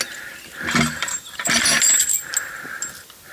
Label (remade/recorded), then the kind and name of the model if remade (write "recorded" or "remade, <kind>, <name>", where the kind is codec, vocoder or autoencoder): recorded